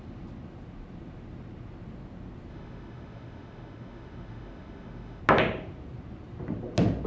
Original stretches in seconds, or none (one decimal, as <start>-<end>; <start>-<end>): 0.0-2.5; 5.2-7.1